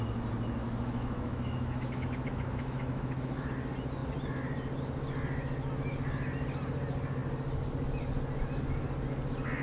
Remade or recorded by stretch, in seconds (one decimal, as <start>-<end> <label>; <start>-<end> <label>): 0.0-0.6 recorded; 0.6-3.5 remade; 3.5-9.6 recorded